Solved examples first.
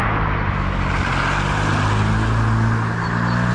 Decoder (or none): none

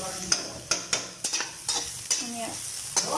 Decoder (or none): none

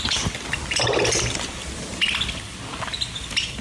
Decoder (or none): none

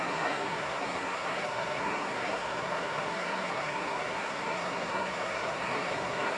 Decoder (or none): codec, SNAC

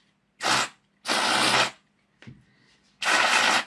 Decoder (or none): none